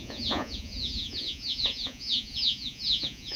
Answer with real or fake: fake